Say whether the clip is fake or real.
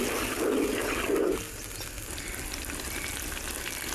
real